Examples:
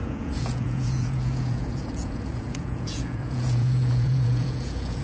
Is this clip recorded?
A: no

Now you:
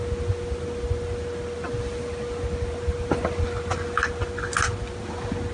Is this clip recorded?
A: yes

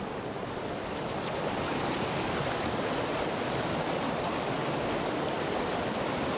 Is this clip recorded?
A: yes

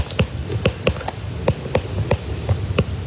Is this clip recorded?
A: yes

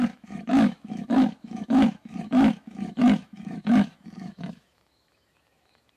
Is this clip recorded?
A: no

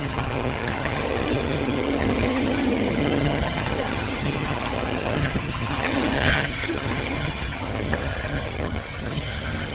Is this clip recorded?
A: no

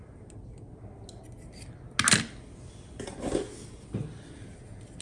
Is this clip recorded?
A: yes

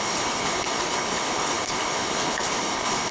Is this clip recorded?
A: no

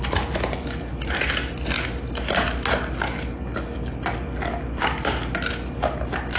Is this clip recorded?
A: yes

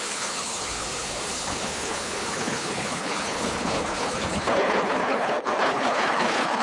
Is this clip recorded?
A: no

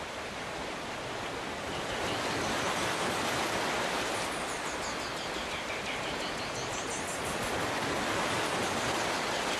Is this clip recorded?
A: no